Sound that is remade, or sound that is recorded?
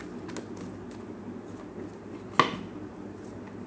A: recorded